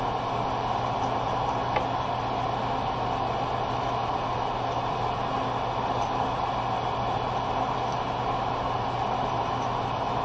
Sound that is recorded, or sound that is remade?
recorded